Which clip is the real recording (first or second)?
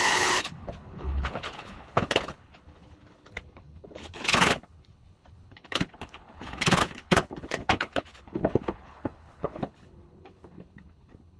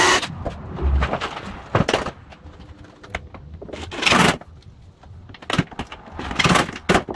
second